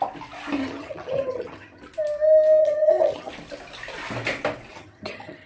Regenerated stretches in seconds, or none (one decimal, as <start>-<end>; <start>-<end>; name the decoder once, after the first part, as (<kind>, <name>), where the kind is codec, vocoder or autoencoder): 0.6-1.8 (vocoder, HiFi-GAN); 2.6-3.3; 4.7-5.5